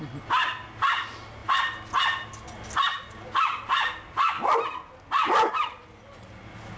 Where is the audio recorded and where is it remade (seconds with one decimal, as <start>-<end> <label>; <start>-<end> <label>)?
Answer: 0.0-6.8 recorded